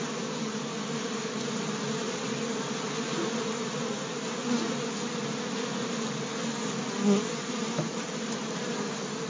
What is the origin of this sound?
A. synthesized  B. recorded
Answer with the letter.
B